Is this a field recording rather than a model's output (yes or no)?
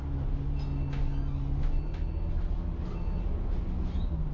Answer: yes